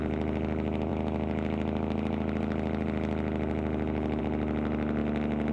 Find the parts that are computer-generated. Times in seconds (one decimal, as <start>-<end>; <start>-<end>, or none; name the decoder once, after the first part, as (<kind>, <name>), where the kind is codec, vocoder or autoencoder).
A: none